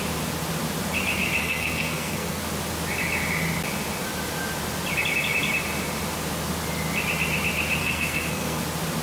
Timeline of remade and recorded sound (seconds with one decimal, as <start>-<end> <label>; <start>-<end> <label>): 0.0-1.4 recorded; 1.4-2.4 remade; 2.4-7.8 recorded; 7.8-8.6 remade; 8.6-9.0 recorded